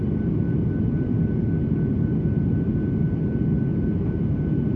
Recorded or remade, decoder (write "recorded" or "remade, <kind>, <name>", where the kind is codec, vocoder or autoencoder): recorded